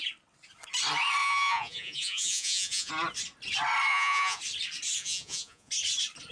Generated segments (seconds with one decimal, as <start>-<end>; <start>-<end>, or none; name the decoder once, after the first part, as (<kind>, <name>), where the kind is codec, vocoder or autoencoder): 1.2-2.9 (vocoder, Vocos); 3.9-4.4; 5.0-5.7